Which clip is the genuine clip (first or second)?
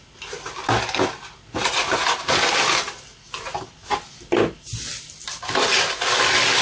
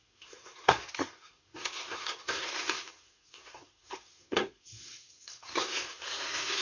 first